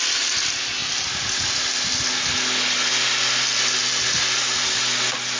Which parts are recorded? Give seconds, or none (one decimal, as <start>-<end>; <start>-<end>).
0.0-5.4